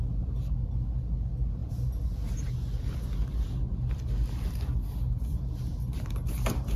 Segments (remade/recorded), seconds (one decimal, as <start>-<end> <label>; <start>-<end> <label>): 0.0-6.8 recorded